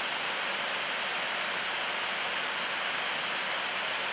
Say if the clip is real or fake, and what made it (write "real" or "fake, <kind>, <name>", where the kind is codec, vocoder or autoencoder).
real